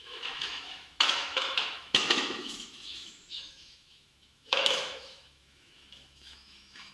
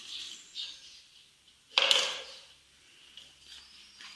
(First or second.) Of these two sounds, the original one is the second